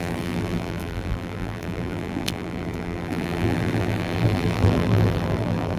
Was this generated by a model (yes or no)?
yes